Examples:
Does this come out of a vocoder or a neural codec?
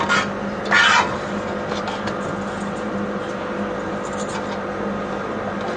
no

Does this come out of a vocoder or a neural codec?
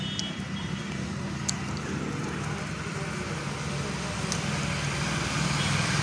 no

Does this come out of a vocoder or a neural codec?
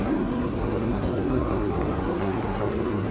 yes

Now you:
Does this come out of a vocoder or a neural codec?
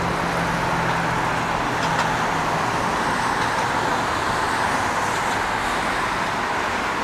no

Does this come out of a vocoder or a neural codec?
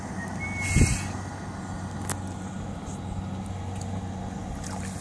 no